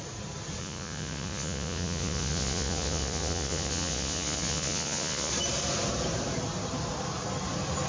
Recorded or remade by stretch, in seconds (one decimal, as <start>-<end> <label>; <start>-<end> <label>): 0.0-0.6 recorded; 0.6-5.3 remade; 5.3-7.9 recorded